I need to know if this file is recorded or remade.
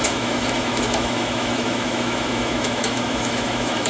remade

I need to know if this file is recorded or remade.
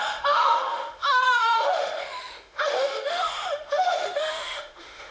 remade